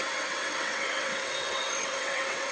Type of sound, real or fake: fake